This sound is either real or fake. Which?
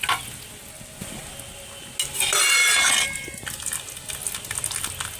real